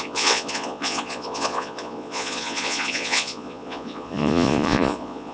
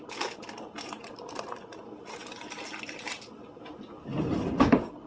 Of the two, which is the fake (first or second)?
first